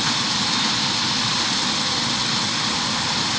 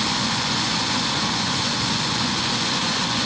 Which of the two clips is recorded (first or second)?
first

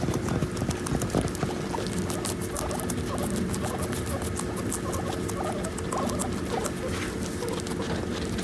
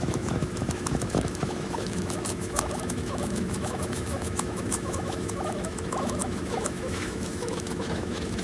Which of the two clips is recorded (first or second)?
first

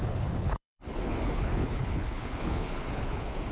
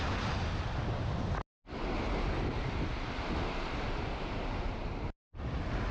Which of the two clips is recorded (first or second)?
second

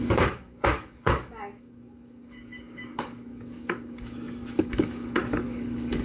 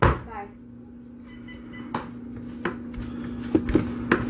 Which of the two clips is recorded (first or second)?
second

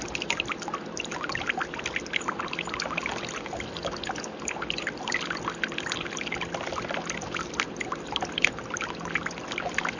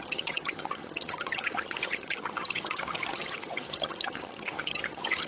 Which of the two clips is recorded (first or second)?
first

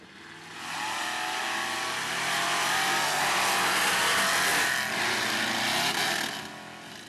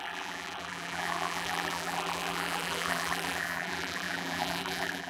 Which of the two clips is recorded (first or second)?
first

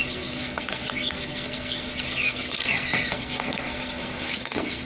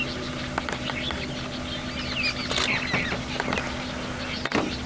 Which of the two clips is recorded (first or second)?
second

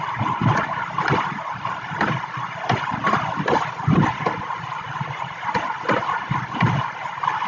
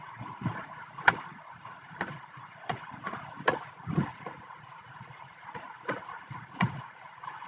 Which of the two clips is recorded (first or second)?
first